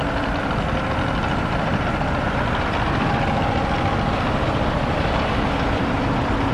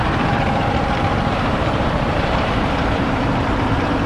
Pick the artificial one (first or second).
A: second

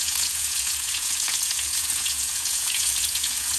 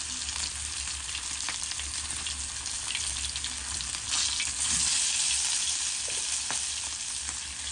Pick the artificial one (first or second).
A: first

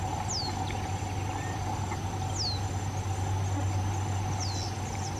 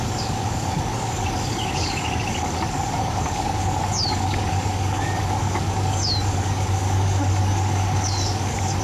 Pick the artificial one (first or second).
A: second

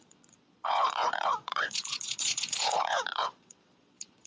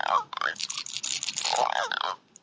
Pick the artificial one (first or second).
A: first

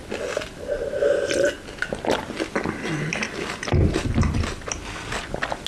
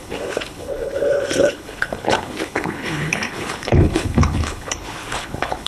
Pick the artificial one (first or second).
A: second